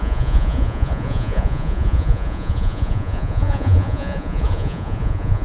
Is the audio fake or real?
fake